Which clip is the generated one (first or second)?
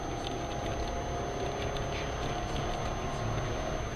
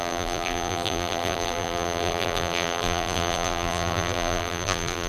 second